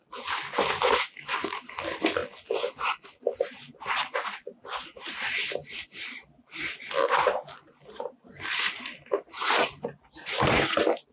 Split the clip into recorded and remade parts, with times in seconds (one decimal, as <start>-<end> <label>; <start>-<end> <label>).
0.0-11.1 recorded